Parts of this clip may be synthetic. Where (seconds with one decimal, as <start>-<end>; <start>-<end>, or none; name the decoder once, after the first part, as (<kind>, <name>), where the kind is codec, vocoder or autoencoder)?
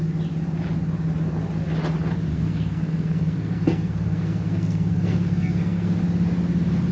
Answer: 2.3-6.0 (codec, SNAC)